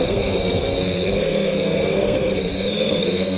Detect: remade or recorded remade